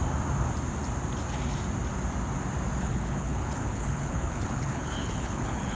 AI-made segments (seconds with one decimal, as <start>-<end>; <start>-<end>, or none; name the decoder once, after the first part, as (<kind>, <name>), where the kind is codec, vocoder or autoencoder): 2.8-5.7 (codec, HILCodec)